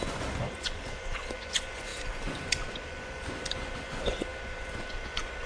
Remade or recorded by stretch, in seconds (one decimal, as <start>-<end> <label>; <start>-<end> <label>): 0.0-5.5 remade